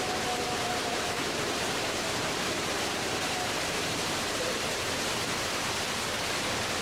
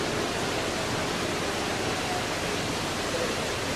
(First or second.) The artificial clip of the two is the first